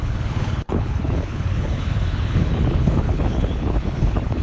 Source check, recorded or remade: remade